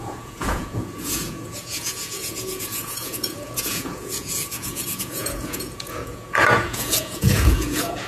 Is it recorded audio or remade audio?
remade